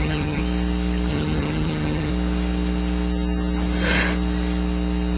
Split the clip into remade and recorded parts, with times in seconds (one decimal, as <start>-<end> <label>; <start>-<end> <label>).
0.0-0.4 remade; 0.4-1.1 recorded; 1.1-2.1 remade; 2.1-5.2 recorded